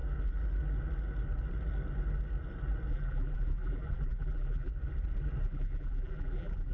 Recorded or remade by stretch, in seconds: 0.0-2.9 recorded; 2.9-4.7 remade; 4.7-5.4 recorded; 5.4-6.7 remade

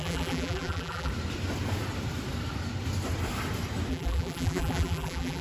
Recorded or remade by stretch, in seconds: 0.0-1.1 remade; 1.1-3.9 recorded; 3.9-5.4 remade